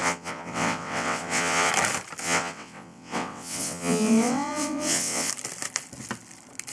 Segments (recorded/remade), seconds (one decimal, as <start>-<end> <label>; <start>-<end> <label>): 0.0-1.7 remade; 1.7-2.2 recorded; 2.2-5.3 remade; 5.3-6.7 recorded